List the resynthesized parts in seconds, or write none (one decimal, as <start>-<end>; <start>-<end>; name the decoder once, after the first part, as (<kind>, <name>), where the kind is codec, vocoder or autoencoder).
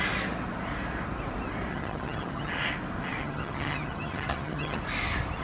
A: 1.7-2.5 (vocoder, HiFi-GAN); 3.2-4.8